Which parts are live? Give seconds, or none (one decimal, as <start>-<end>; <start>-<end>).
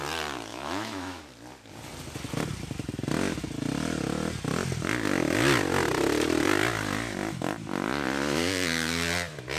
0.0-0.5; 1.2-9.6